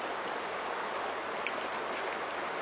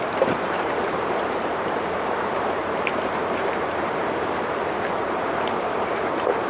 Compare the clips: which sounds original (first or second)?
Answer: first